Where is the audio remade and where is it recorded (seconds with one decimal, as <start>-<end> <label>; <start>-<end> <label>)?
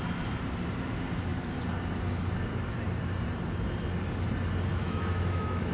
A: 0.0-4.7 recorded; 4.7-5.7 remade